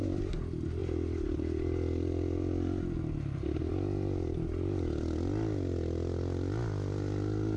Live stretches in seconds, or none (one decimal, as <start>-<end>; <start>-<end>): 0.0-7.6